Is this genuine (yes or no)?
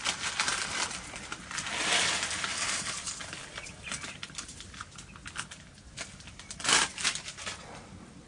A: yes